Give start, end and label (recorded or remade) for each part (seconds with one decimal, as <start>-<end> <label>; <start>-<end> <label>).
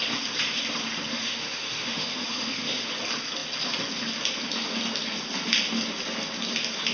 0.0-1.1 recorded; 1.1-2.9 remade; 2.9-6.9 recorded